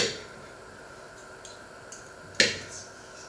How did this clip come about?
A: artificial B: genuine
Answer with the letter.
B